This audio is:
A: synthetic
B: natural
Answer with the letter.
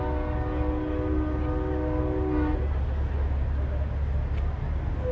B